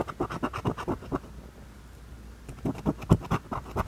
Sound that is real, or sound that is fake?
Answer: real